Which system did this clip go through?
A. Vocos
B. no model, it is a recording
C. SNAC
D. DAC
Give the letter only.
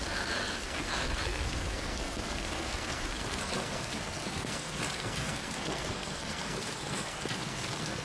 C